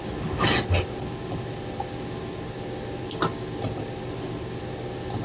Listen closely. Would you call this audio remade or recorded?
recorded